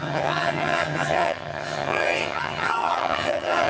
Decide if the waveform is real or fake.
fake